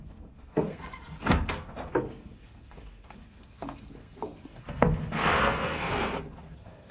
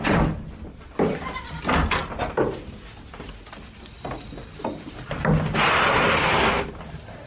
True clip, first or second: second